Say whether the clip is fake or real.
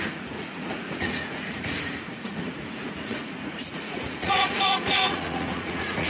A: fake